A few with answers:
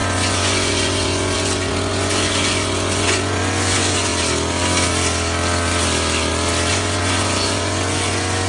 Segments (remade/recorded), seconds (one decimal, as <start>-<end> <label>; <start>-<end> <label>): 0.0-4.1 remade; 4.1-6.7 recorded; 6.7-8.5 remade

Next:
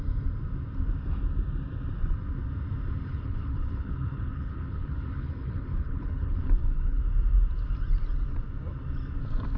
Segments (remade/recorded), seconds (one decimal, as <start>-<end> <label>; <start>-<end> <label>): 0.0-3.1 recorded; 3.1-7.0 remade; 7.0-9.6 recorded

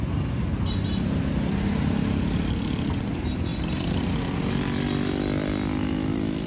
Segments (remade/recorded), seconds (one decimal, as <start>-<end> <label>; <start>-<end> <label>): 0.0-6.5 recorded

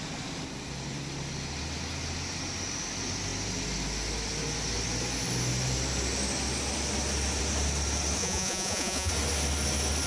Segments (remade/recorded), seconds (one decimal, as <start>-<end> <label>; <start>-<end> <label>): 0.0-8.2 recorded; 8.2-9.1 remade; 9.1-10.1 recorded